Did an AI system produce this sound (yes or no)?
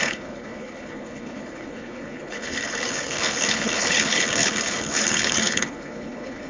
yes